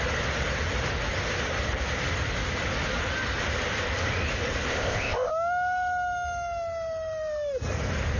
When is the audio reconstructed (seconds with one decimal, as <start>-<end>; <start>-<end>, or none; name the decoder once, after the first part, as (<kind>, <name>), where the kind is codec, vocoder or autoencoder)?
4.7-5.3 (codec, ZipCodec)